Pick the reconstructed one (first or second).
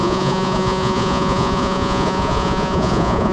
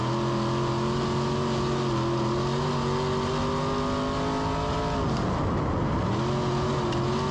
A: first